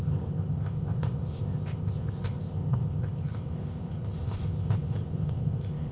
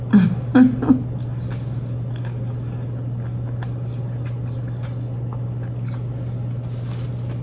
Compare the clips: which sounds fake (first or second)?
first